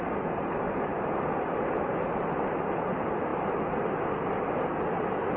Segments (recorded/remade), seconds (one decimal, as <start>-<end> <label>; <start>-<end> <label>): 0.0-5.4 recorded